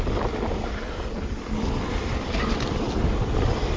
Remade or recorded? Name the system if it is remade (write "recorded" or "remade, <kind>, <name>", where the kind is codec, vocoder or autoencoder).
recorded